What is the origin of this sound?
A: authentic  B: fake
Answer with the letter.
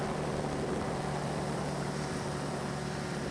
B